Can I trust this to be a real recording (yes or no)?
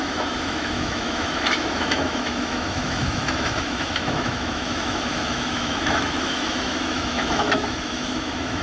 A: no